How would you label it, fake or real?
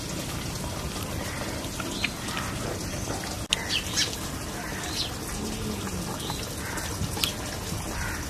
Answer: real